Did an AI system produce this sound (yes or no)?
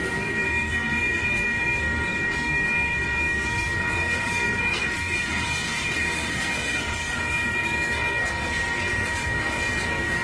yes